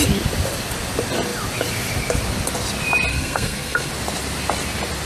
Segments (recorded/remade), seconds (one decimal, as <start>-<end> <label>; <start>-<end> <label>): 0.0-3.1 recorded; 3.1-3.9 remade; 3.9-5.1 recorded